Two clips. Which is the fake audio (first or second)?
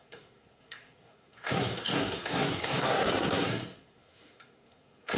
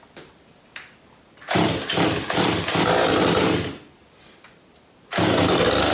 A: first